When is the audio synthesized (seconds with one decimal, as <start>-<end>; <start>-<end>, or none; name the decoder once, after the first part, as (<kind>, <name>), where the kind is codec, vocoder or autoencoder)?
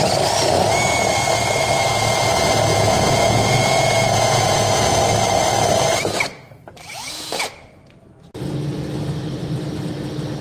2.7-5.0 (vocoder, Vocos); 6.9-7.5